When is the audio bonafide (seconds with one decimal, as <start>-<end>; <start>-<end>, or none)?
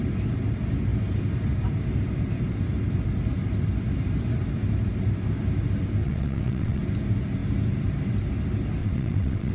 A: 0.0-6.0; 6.8-8.8